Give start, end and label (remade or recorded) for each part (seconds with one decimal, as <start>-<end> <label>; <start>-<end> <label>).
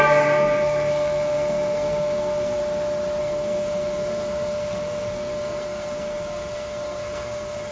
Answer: 0.0-2.6 remade; 2.6-3.2 recorded; 3.2-7.7 remade